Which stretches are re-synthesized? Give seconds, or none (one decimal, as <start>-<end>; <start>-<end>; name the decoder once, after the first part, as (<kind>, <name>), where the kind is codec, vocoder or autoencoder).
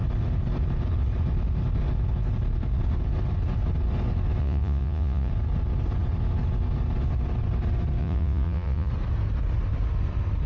4.4-5.3 (vocoder, Vocos); 8.0-8.9